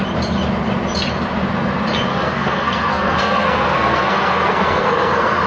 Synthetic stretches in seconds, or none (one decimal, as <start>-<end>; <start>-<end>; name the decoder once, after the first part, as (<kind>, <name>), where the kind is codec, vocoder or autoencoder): 2.1-5.5 (codec, SNAC)